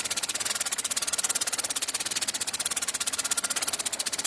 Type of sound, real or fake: real